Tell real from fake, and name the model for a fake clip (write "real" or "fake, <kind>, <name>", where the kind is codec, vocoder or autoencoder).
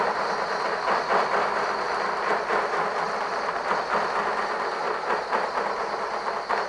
real